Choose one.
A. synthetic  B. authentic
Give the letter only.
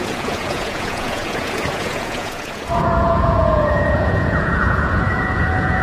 A